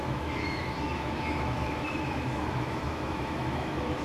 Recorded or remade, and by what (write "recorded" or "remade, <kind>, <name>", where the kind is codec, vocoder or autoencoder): remade, autoencoder, DAC-VAE